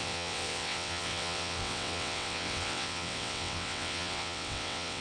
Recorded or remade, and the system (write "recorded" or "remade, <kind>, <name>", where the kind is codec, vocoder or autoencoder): remade, vocoder, WaveNeXt